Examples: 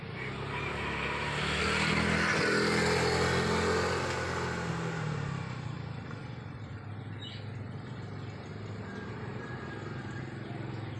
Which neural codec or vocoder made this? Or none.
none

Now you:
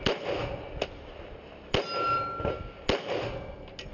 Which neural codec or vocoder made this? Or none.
none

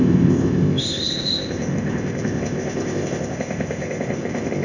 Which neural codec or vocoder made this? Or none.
codec, ZipCodec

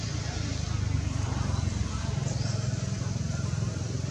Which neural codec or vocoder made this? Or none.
none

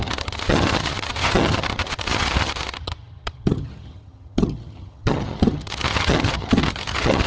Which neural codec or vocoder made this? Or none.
vocoder, HiFi-GAN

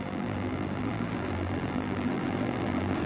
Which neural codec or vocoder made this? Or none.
vocoder, BigVGAN v2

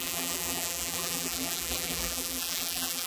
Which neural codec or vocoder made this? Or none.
vocoder, BigVGAN v2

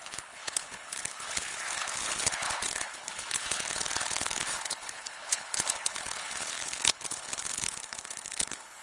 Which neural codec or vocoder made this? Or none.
codec, HILCodec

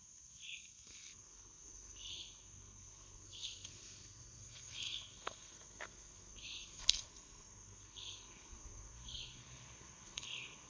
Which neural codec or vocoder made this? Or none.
codec, SNAC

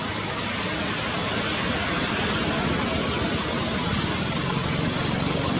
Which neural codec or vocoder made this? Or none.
none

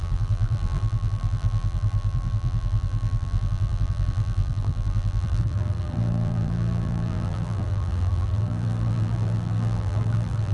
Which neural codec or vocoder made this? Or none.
vocoder, BigVGAN v2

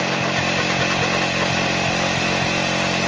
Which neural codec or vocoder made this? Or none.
none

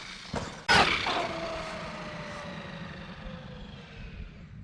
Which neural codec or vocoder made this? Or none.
none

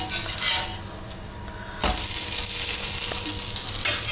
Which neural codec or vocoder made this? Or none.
none